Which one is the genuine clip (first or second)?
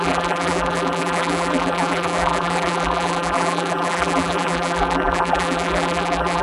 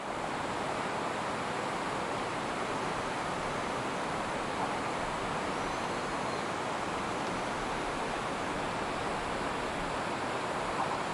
second